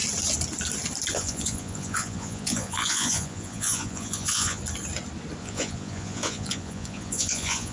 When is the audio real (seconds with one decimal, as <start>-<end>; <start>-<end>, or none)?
0.0-1.1; 4.6-5.4